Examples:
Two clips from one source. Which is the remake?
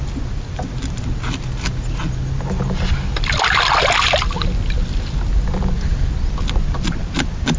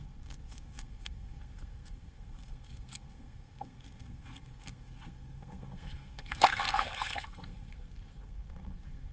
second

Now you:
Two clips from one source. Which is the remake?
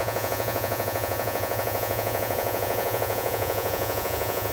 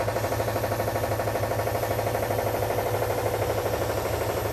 first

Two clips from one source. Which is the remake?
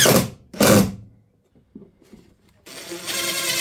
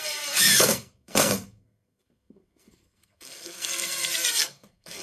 second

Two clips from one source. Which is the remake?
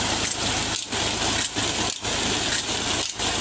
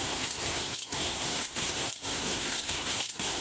second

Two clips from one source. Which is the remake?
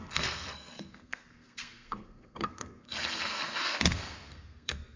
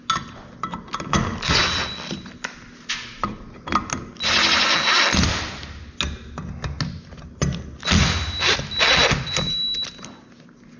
first